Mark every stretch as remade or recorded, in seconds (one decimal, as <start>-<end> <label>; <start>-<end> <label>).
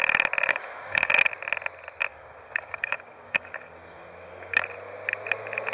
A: 0.0-0.5 recorded; 0.5-1.1 remade; 1.1-2.1 recorded; 2.1-4.6 remade; 4.6-5.7 recorded